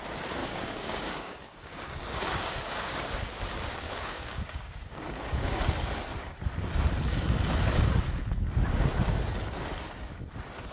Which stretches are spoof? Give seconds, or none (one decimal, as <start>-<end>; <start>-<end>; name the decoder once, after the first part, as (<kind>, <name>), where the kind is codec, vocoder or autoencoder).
0.4-5.6 (codec, DAC)